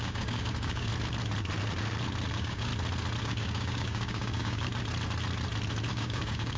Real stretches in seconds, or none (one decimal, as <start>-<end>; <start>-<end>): 0.9-2.3; 2.7-3.2; 4.7-5.9